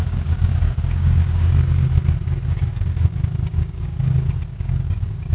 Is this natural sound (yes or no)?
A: no